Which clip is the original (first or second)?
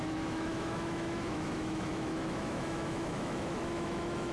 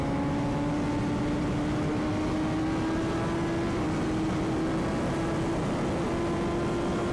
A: second